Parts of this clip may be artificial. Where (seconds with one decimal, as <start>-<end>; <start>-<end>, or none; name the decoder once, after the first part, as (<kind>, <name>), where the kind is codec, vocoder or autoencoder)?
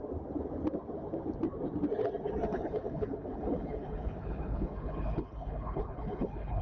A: 2.5-6.6 (codec, HILCodec)